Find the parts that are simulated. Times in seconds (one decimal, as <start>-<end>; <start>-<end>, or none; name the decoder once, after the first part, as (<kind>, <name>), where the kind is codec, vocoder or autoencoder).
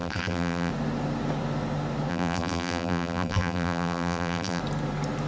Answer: 0.0-0.7 (vocoder, BigVGAN v2); 2.1-4.6